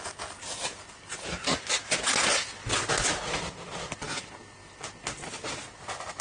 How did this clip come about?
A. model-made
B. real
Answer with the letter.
B